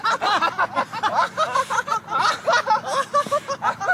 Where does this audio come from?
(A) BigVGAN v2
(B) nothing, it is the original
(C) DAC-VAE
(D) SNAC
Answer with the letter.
B